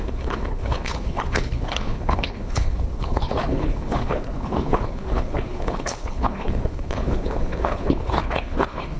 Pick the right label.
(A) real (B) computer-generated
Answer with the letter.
B